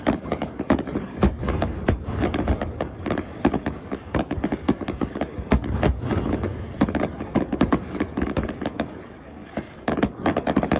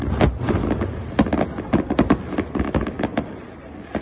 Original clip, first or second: second